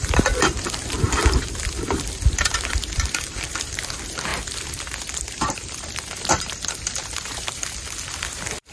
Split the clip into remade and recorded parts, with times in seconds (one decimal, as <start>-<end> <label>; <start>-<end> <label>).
0.0-4.3 remade; 4.3-4.8 recorded; 4.8-8.7 remade